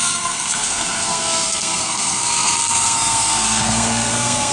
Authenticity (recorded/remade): remade